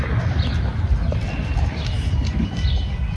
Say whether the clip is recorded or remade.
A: recorded